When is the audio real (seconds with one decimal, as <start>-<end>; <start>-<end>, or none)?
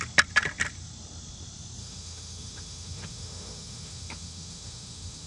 0.0-1.8